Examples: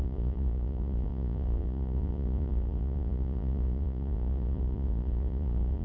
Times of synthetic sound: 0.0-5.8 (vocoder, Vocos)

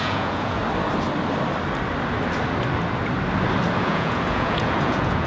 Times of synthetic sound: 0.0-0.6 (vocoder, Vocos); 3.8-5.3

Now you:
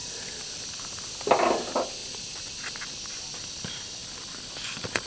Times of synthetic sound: none